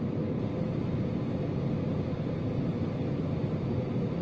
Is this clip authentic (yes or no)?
yes